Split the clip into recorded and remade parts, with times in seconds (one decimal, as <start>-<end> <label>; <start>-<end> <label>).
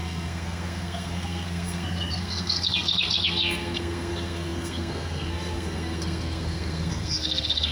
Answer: 0.0-7.7 remade